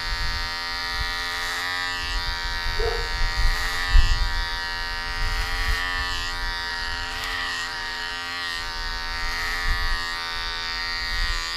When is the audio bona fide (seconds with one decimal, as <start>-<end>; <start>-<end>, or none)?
0.0-6.7; 8.1-11.6